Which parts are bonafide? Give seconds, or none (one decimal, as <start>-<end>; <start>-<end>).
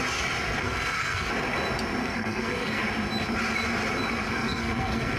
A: 0.0-0.6; 1.3-2.0; 2.8-4.3